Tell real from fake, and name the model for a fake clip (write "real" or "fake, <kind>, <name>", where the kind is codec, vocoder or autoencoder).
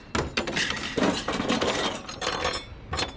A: real